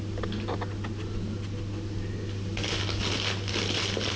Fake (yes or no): no